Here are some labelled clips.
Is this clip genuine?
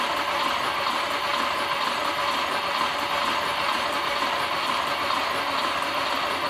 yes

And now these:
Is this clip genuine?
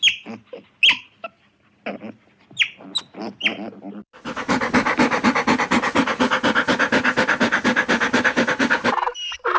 yes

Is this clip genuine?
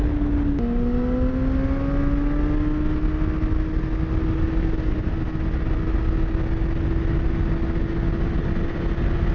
yes